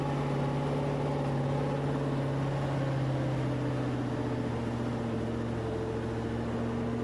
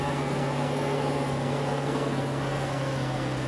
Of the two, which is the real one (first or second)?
first